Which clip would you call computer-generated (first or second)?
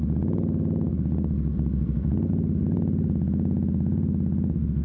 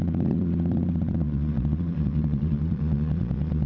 second